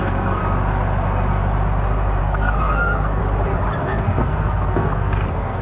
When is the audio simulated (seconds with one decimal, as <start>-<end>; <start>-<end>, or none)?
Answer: 0.0-0.4; 2.2-3.2; 3.8-5.6